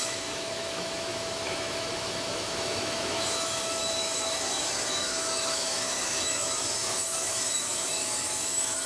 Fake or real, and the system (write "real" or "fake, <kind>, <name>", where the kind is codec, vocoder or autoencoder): fake, autoencoder, DAC-VAE